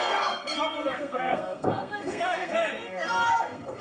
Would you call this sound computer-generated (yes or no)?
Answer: yes